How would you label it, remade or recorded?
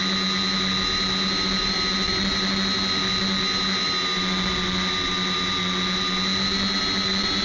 recorded